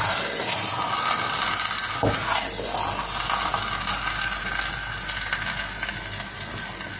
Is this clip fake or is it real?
real